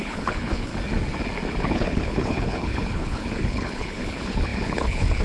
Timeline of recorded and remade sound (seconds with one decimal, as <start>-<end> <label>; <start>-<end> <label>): 0.0-0.7 remade; 0.7-1.6 recorded; 1.6-5.2 remade